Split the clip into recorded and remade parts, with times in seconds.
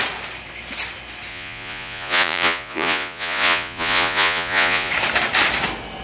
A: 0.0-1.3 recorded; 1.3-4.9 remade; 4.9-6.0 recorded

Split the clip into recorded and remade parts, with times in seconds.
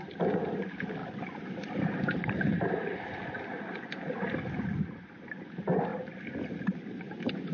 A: 0.0-7.5 recorded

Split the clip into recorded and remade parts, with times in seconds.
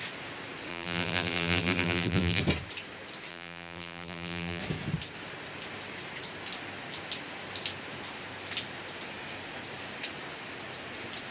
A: 0.0-0.7 recorded; 0.7-2.4 remade; 2.4-3.3 recorded; 3.3-4.6 remade; 4.6-11.3 recorded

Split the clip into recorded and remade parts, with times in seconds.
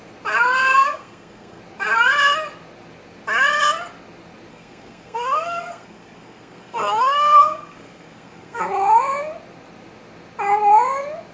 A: 0.0-0.6 recorded; 0.6-1.6 remade; 1.6-4.5 recorded; 4.5-8.6 remade; 8.6-11.3 recorded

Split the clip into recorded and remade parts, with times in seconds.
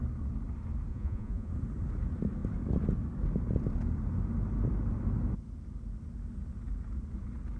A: 0.0-0.9 recorded; 0.9-1.5 remade; 1.5-7.6 recorded